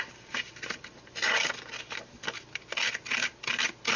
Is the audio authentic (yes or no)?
yes